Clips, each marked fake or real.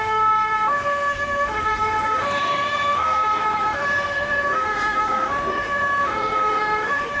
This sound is fake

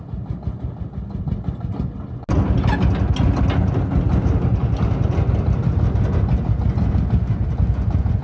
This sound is real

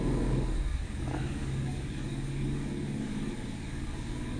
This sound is fake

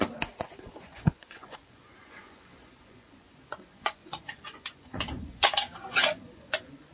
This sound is fake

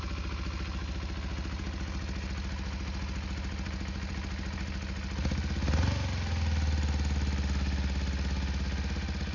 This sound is real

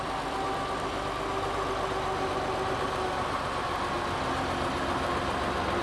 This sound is real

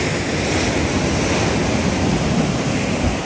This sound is real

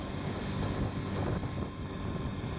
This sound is real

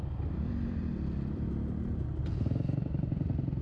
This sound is fake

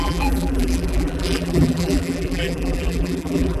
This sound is fake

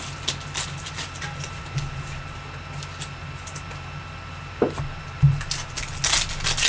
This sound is real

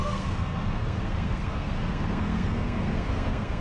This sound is fake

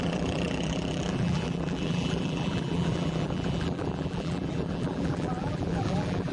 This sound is fake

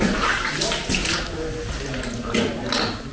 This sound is real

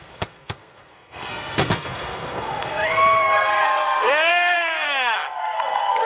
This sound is fake